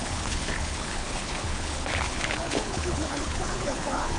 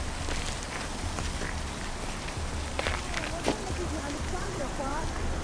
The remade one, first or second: first